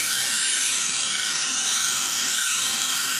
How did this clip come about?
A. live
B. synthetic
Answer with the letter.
B